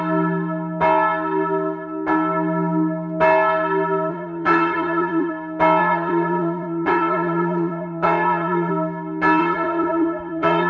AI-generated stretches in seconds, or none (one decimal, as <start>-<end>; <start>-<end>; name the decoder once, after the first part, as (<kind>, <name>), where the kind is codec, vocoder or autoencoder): 4.1-5.3 (vocoder, Vocos); 5.8-8.7; 9.4-10.7